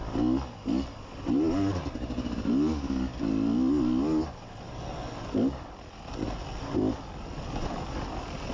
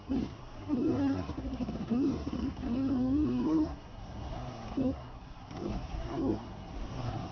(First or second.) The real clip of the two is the first